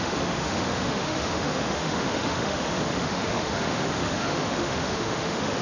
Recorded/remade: remade